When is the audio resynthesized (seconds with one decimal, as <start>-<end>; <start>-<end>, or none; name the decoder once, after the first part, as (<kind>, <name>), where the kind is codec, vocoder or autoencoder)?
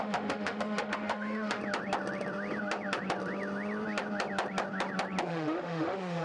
0.0-1.6 (autoencoder, DAC-VAE); 5.3-6.2